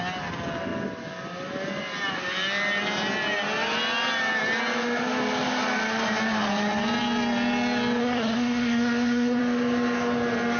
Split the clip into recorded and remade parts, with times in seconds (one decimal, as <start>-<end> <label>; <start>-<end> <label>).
0.0-8.0 recorded; 8.0-9.4 remade; 9.4-10.6 recorded